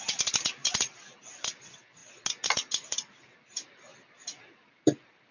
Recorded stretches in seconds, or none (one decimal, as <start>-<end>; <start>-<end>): 0.0-5.3